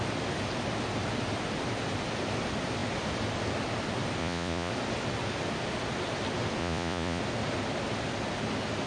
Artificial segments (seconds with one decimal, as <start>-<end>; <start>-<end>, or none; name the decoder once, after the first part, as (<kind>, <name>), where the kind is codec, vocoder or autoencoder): 4.2-4.7 (vocoder, Vocos); 6.6-7.2

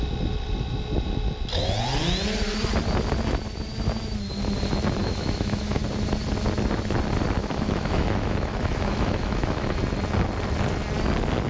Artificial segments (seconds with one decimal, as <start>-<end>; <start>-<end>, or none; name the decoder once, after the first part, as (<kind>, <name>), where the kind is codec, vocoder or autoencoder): 5.0-5.8 (autoencoder, DAC-VAE); 7.4-9.8

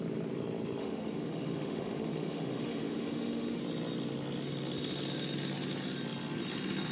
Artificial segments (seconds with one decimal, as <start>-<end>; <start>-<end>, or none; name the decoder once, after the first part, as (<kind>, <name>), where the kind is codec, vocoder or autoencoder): 0.8-3.6 (autoencoder, DAC-VAE)

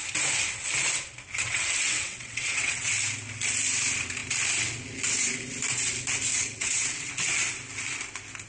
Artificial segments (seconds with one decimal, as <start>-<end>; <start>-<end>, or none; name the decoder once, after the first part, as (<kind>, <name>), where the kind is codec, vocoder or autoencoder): 1.4-2.9 (vocoder, WaveNeXt); 6.3-7.1

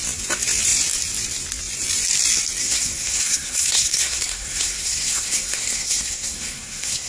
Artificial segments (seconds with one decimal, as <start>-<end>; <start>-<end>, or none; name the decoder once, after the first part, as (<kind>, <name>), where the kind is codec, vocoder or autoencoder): 2.6-7.1 (codec, SNAC)